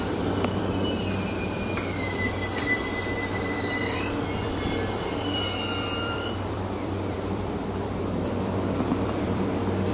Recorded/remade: remade